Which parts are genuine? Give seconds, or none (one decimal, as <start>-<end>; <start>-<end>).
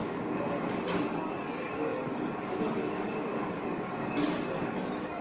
0.0-0.7